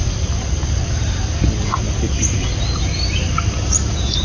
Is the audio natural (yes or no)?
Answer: yes